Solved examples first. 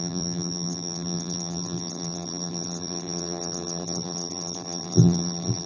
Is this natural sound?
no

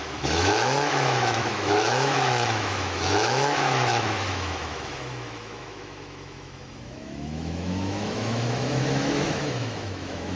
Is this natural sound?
no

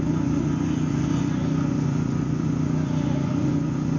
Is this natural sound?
no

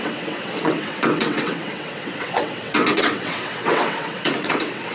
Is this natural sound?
no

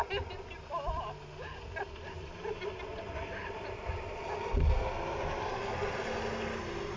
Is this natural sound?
yes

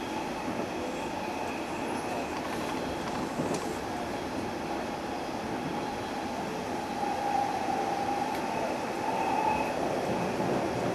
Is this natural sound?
yes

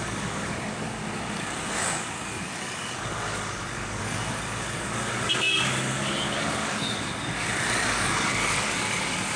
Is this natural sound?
no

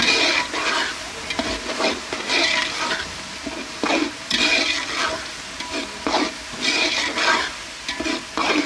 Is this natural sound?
yes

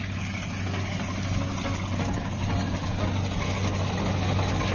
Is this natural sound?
yes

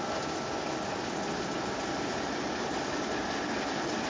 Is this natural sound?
yes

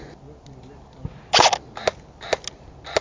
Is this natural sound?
yes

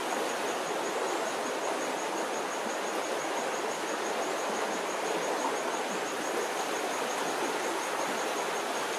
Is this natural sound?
yes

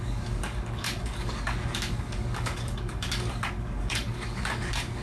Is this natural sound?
no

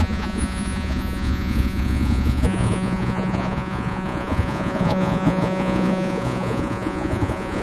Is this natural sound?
no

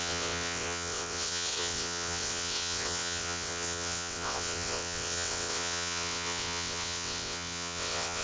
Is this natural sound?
no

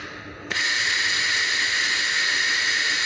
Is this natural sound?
yes